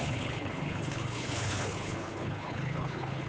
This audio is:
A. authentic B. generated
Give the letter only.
B